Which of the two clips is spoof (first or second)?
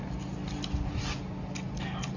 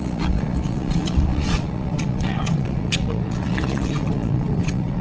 second